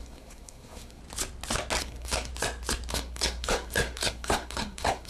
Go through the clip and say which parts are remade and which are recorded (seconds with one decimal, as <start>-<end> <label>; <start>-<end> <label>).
0.0-1.0 remade; 1.0-1.8 recorded; 1.8-2.3 remade; 2.3-2.9 recorded; 2.9-5.1 remade

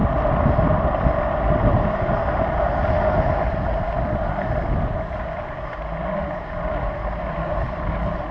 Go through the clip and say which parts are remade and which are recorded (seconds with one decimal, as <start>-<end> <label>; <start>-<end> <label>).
0.0-8.3 recorded

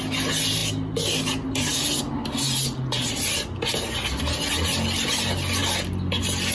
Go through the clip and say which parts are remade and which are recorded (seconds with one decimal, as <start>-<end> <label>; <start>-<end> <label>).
0.0-6.5 recorded

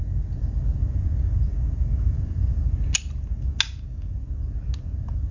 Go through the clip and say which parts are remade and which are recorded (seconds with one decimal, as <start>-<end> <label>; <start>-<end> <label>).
0.0-5.3 recorded

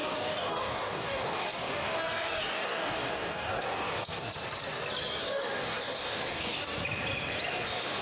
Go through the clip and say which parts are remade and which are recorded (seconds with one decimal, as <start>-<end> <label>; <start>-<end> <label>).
0.0-4.3 remade; 4.3-5.2 recorded; 5.2-6.6 remade; 6.6-7.5 recorded; 7.5-8.0 remade

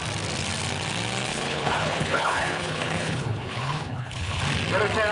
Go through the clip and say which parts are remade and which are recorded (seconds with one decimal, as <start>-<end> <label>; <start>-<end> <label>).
0.0-1.3 recorded; 1.3-4.4 remade; 4.4-5.1 recorded

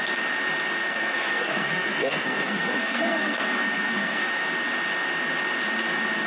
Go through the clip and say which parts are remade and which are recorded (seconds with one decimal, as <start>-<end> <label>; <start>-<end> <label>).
0.0-0.8 recorded; 0.8-4.3 remade; 4.3-6.3 recorded